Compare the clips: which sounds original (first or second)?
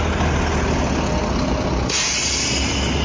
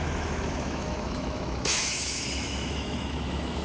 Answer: first